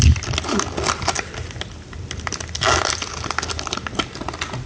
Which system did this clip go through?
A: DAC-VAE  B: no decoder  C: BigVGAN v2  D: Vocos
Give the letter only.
B